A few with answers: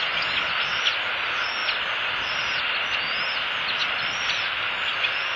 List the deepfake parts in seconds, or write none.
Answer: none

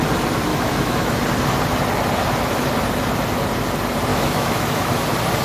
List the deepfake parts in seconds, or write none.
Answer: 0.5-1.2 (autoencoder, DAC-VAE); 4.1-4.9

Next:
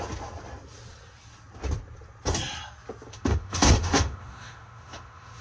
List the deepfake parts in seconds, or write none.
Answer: 3.1-5.4 (autoencoder, DAC-VAE)